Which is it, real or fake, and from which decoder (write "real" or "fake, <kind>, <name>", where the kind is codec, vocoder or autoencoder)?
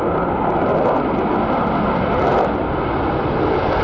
real